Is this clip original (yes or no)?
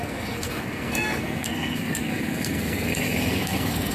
no